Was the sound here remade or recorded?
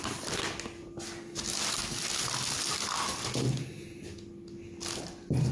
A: recorded